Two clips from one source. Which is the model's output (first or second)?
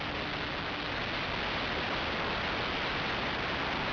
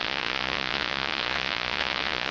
second